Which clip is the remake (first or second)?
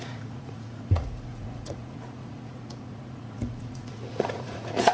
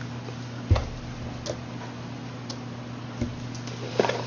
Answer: first